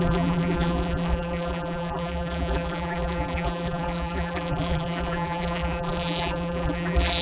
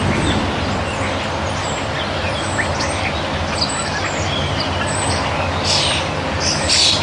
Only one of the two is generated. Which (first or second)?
first